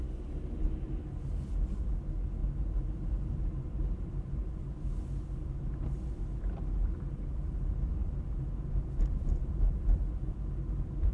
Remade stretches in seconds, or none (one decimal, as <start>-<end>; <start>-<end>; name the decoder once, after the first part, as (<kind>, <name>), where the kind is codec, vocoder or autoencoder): 2.4-4.1 (vocoder, BigVGAN v2)